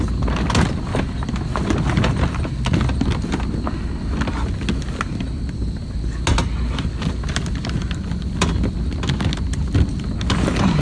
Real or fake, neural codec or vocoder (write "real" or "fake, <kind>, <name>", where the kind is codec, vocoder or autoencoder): real